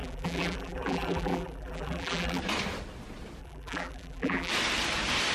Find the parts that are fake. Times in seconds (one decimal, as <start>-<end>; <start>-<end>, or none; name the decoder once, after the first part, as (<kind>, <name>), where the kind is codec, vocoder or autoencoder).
0.0-2.4 (vocoder, BigVGAN v2); 3.4-4.5